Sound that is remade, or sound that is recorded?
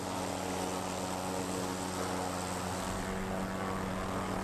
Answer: recorded